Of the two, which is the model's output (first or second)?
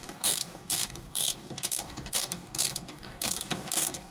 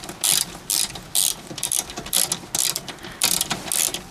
first